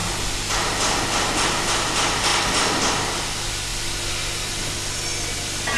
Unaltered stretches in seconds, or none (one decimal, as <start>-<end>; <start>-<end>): 0.0-5.8

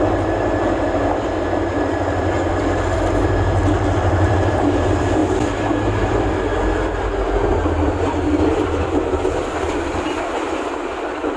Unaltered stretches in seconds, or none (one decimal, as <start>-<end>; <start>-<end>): 6.5-8.0

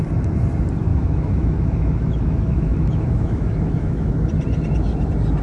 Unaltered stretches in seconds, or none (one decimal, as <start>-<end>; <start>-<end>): 0.0-0.9; 4.1-5.4

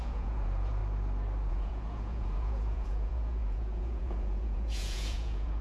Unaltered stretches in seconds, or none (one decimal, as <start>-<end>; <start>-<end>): 0.8-1.5

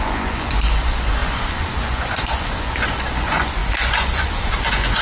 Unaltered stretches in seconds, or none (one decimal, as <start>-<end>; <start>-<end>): none

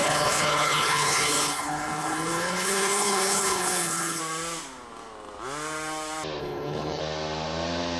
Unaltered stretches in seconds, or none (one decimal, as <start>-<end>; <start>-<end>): 4.2-6.4; 7.0-8.0

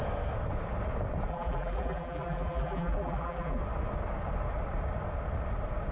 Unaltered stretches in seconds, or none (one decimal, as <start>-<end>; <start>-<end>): 0.0-1.3; 3.6-5.9

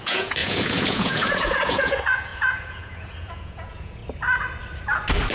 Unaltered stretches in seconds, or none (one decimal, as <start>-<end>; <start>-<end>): 4.0-5.3